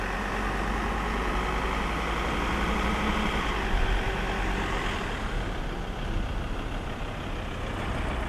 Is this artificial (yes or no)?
no